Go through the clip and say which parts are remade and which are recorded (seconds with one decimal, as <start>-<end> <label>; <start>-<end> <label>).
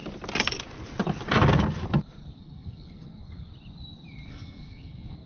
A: 0.0-2.4 recorded; 2.4-3.5 remade; 3.5-4.3 recorded; 4.3-5.3 remade